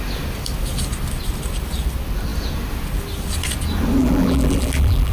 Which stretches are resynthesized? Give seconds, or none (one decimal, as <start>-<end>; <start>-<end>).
4.0-5.1